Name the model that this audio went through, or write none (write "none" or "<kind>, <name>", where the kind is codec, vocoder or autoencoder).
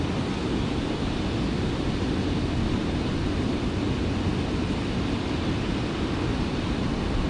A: none